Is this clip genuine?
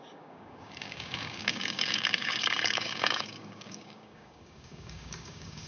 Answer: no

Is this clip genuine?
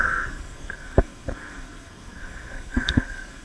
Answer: no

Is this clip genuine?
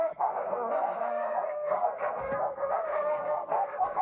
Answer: no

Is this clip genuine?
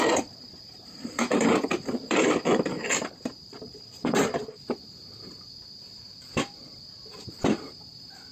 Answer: no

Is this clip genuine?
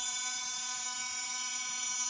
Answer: no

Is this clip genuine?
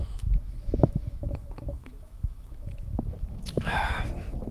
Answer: no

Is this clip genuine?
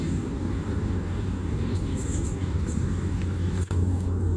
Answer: no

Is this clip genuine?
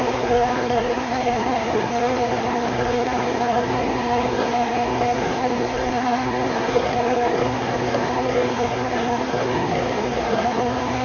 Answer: no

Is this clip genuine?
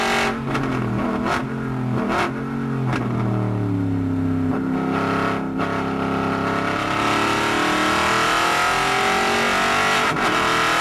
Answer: yes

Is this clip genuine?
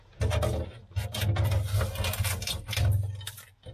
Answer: yes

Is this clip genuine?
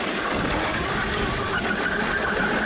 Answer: yes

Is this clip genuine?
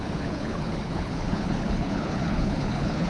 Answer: no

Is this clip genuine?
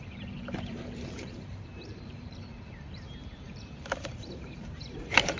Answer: no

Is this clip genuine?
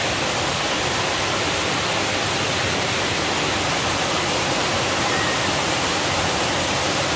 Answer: yes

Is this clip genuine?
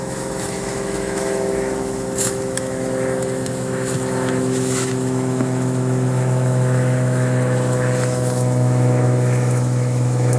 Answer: no